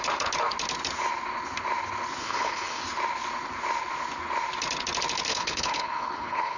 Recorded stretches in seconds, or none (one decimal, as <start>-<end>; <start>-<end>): 0.0-2.2; 2.8-5.3